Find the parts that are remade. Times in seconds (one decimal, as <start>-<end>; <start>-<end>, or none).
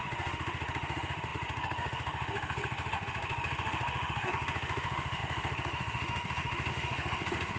0.0-7.6